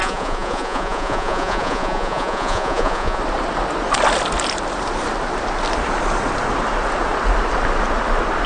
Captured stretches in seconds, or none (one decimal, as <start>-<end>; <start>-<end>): 3.2-8.5